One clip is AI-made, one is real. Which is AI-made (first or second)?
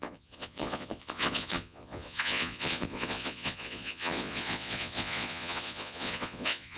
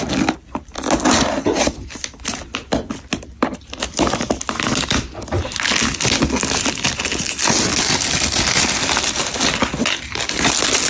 first